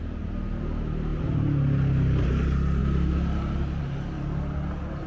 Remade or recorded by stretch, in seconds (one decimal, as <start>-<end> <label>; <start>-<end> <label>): 0.0-5.1 recorded